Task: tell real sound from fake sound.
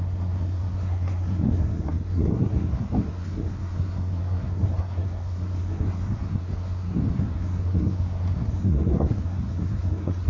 fake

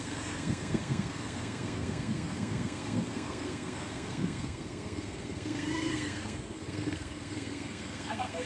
fake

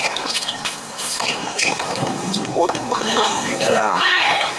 fake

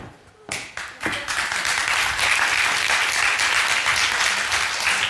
real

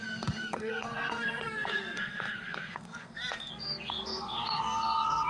fake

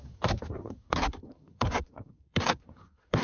fake